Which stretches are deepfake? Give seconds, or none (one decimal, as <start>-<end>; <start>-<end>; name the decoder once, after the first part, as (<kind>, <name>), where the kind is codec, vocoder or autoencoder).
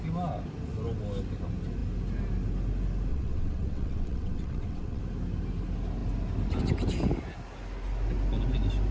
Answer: 3.1-5.0 (vocoder, WaveNeXt)